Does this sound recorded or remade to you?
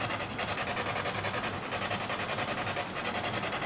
recorded